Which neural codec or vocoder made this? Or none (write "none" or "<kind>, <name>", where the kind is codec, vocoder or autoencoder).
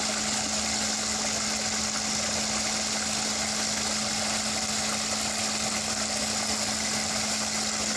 none